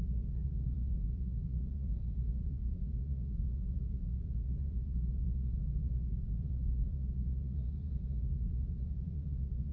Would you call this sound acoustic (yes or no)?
no